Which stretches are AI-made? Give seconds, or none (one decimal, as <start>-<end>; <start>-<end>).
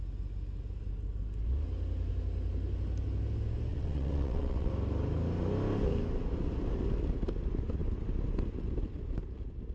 3.7-4.7